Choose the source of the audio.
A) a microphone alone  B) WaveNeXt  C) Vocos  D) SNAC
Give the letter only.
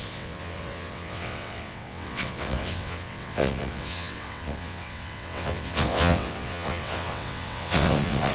B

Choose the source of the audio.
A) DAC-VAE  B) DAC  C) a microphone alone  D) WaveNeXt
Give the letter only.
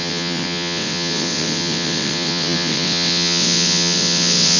D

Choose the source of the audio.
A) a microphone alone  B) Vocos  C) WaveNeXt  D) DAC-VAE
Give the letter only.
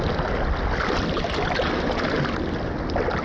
A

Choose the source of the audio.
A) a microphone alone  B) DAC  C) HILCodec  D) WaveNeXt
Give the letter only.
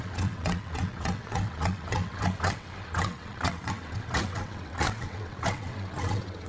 D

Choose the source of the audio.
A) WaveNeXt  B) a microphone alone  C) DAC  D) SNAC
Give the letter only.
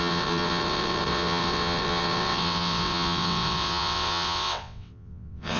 A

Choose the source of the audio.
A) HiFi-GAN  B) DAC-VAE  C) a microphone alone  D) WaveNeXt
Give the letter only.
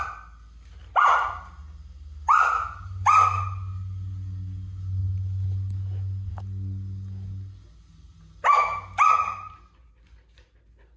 C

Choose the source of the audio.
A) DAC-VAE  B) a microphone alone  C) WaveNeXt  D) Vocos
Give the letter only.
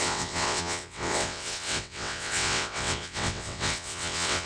C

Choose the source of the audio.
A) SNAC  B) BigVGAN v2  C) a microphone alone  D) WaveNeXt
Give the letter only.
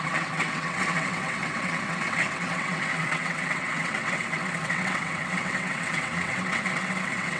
D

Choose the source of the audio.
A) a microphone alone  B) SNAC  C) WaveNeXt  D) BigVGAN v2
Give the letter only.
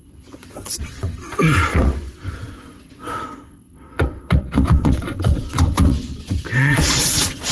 C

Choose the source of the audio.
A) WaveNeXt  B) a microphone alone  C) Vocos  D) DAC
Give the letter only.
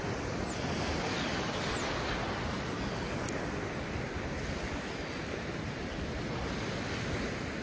B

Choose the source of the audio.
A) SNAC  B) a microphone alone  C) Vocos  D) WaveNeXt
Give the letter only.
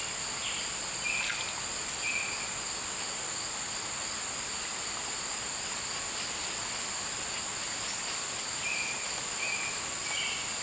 B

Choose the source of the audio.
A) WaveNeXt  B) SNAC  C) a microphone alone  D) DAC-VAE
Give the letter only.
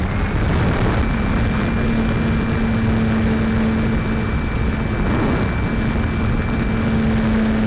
C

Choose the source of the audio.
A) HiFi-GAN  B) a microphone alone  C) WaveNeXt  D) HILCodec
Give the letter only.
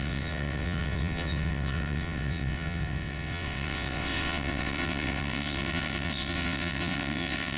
C